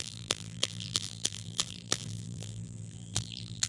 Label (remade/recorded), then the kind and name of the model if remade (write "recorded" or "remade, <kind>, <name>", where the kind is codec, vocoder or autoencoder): remade, vocoder, BigVGAN v2